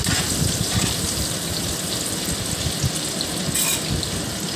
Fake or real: real